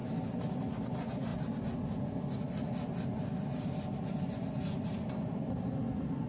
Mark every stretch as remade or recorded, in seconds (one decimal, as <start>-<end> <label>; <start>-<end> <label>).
0.0-6.3 recorded

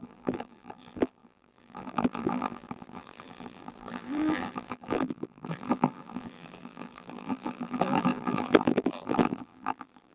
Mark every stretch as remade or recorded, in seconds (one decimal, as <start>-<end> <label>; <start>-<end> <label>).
0.0-10.1 remade

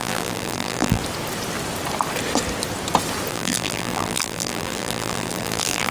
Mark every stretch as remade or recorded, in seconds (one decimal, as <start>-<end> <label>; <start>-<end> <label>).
0.0-1.0 remade; 1.0-3.3 recorded; 3.3-5.9 remade

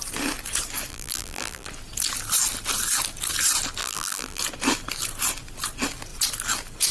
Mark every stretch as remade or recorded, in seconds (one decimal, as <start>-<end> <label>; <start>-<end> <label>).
0.0-0.9 recorded; 0.9-1.7 remade; 1.7-3.8 recorded; 3.8-4.4 remade; 4.4-6.9 recorded

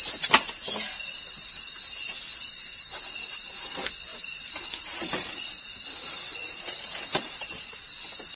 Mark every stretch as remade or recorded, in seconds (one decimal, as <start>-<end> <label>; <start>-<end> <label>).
0.0-4.1 recorded; 4.1-5.8 remade; 5.8-6.4 recorded; 6.4-7.7 remade; 7.7-8.4 recorded